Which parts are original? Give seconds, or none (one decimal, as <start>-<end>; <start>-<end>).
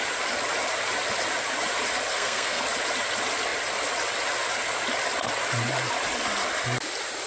0.0-2.1; 2.6-7.3